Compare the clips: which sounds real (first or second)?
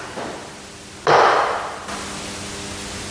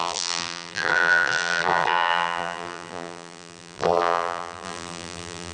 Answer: first